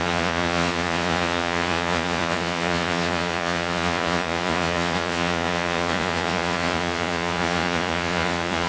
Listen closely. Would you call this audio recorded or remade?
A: remade